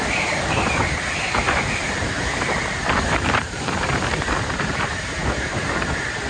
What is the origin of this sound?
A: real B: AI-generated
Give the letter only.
B